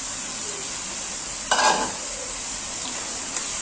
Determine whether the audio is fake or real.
real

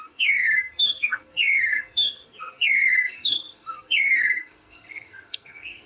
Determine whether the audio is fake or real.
fake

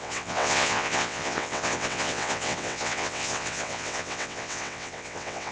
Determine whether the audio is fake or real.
fake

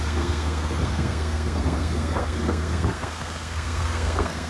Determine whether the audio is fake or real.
fake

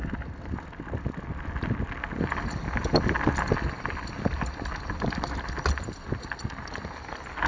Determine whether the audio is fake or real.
real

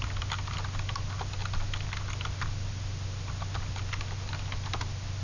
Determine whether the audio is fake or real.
real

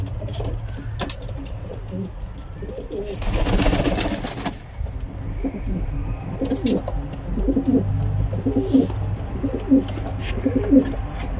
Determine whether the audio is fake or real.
real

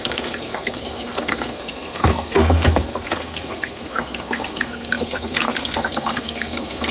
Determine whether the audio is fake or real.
fake